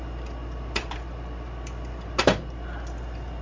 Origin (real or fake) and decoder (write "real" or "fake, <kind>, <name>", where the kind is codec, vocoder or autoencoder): real